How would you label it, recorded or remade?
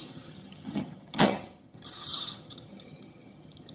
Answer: remade